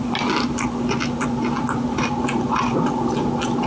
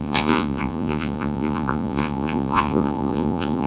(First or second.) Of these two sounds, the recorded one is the first